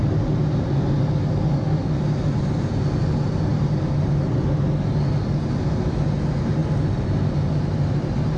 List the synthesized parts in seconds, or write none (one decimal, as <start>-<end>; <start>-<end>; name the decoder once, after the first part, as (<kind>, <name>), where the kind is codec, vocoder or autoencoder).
none